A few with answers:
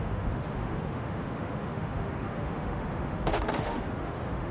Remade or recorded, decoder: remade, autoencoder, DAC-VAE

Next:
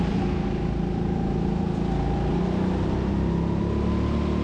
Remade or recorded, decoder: recorded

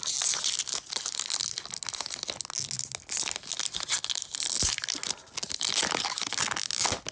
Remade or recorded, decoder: recorded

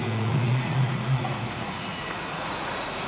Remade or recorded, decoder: remade, vocoder, Vocos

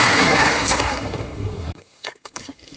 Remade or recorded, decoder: remade, codec, SNAC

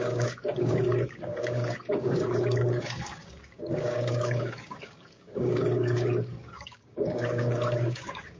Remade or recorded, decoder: remade, codec, DAC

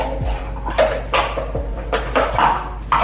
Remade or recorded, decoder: recorded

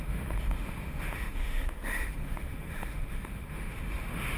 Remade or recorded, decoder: remade, autoencoder, DAC-VAE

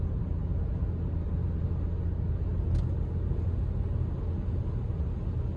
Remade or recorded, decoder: recorded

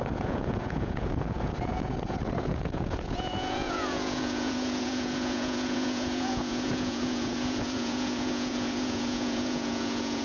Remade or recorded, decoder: remade, vocoder, Vocos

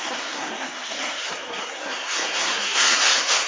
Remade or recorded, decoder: remade, codec, SNAC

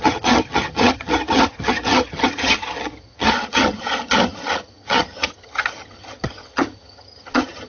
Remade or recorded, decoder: remade, vocoder, HiFi-GAN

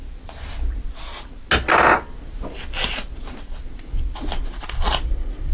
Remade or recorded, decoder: recorded